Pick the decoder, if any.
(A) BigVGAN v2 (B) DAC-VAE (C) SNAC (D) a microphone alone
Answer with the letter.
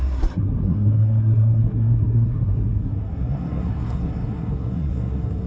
C